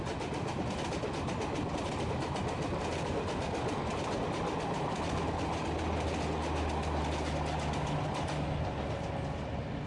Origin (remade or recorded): recorded